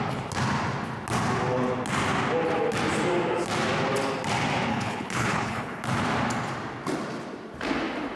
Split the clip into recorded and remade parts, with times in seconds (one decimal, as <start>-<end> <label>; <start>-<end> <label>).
0.0-4.7 recorded; 4.7-5.8 remade; 5.8-8.2 recorded